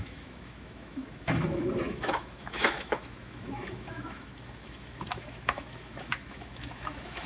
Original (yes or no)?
no